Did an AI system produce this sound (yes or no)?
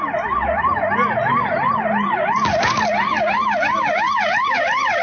no